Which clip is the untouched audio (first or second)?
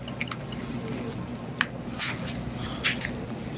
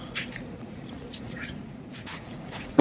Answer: first